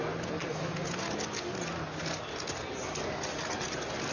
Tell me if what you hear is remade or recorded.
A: recorded